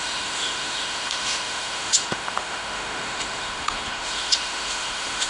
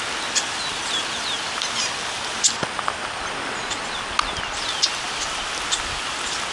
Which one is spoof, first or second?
first